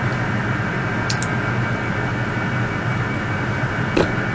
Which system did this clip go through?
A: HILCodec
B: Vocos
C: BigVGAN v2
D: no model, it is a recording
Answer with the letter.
D